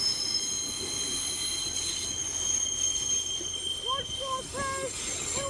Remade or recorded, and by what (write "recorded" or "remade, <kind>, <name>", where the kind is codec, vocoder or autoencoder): recorded